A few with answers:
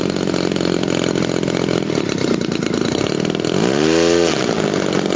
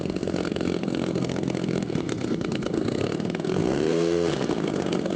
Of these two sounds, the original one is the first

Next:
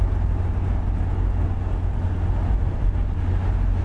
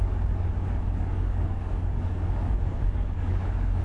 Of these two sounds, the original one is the first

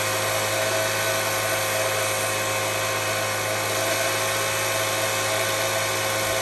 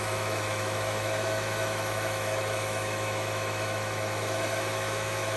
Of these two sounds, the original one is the first